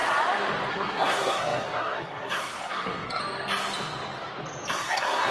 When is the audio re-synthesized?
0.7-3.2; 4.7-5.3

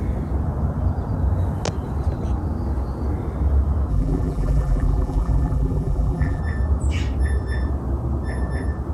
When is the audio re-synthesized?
3.9-6.4

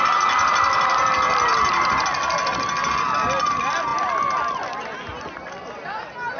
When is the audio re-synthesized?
none

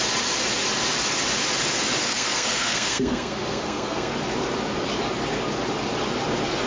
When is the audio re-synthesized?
2.0-4.1

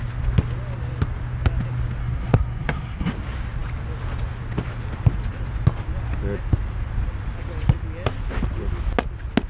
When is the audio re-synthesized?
2.0-3.1

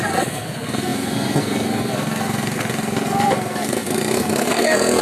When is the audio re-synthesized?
0.0-5.0